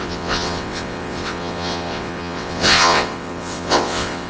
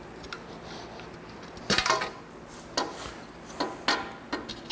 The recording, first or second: second